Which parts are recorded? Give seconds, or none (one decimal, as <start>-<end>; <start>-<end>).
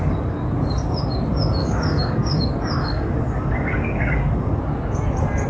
0.0-1.6; 2.4-2.8; 4.6-5.5